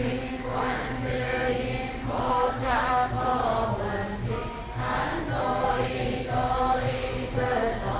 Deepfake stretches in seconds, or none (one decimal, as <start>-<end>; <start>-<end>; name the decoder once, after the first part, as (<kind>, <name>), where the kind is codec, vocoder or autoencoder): 0.0-1.5 (codec, SNAC); 2.2-3.4; 5.4-8.0

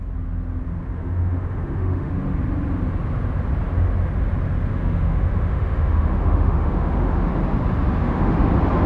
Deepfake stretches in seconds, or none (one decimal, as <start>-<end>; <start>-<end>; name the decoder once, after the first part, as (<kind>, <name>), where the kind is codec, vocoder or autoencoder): 0.9-2.1 (autoencoder, DAC-VAE); 4.7-7.3; 8.0-8.5

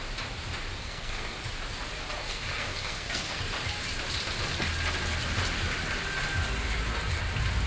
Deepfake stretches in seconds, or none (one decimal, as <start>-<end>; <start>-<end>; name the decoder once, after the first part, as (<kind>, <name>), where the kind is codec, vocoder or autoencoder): 0.8-1.4 (codec, SNAC); 2.2-3.4

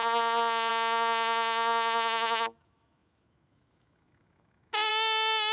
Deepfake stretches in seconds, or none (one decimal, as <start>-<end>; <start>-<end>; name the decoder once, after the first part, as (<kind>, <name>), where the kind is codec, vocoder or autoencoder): 0.7-5.5 (autoencoder, DAC-VAE)